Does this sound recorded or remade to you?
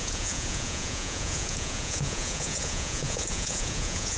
remade